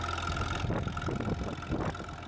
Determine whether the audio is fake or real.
real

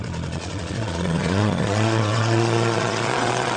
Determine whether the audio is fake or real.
fake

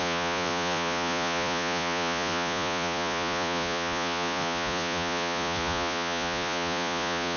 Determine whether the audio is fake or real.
fake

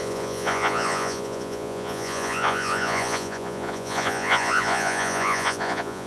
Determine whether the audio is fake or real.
fake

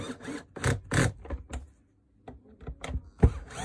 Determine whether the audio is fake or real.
real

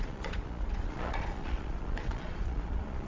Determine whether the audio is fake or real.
fake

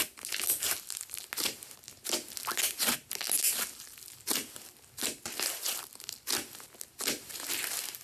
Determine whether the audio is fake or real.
real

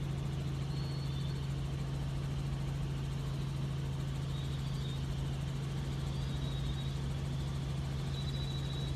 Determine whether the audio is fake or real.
real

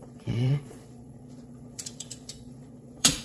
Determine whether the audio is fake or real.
fake